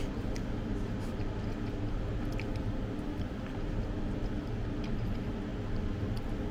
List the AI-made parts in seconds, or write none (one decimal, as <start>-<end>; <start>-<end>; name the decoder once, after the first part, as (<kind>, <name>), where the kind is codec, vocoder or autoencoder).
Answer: none